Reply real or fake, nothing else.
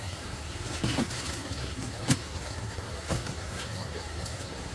fake